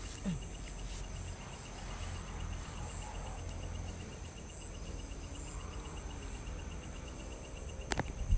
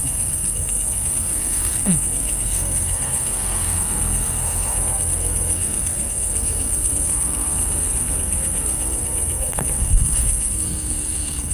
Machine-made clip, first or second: second